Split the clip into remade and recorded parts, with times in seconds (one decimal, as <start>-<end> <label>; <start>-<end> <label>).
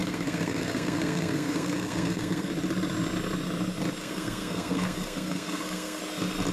0.0-2.5 remade; 2.5-4.0 recorded; 4.0-6.0 remade; 6.0-6.5 recorded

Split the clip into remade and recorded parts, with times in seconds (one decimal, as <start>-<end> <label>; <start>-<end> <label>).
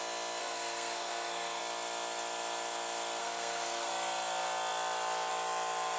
0.0-0.4 recorded; 0.4-1.6 remade; 1.6-3.2 recorded; 3.2-3.9 remade; 3.9-6.0 recorded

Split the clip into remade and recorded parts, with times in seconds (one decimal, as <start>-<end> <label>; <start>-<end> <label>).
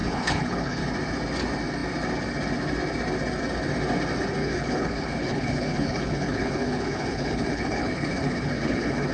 0.0-0.8 remade; 0.8-4.4 recorded; 4.4-9.1 remade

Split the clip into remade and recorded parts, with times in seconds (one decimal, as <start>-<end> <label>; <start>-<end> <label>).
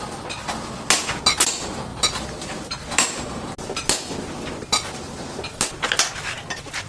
0.0-6.9 recorded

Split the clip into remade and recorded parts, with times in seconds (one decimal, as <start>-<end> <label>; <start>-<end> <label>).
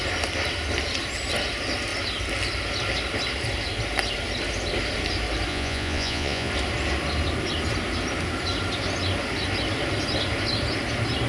0.0-5.5 recorded; 5.5-6.5 remade; 6.5-11.3 recorded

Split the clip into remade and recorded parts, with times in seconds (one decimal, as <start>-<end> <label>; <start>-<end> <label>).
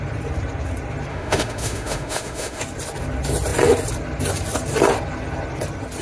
0.0-1.1 recorded; 1.1-2.6 remade; 2.6-6.0 recorded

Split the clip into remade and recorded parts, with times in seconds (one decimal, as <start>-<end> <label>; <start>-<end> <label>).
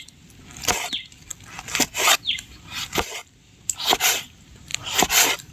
0.0-4.7 recorded; 4.7-5.5 remade